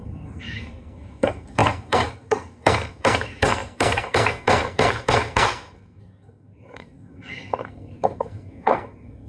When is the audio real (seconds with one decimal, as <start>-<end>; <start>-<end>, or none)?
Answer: none